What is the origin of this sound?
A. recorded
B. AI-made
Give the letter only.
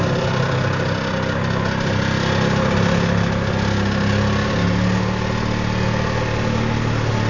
A